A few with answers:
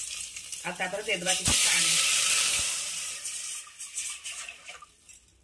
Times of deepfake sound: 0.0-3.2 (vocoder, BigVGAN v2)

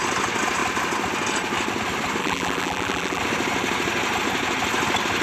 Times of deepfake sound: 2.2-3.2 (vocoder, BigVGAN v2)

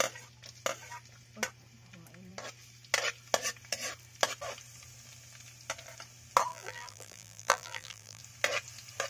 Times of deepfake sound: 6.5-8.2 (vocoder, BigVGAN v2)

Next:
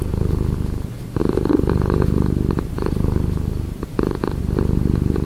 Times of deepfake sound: 1.2-4.4 (vocoder, BigVGAN v2)